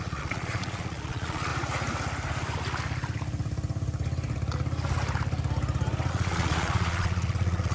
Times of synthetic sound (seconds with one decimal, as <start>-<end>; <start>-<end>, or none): 0.0-1.5; 6.1-7.7